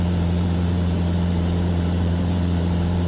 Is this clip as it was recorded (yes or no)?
no